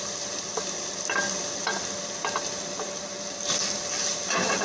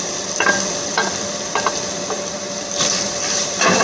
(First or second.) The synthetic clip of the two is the second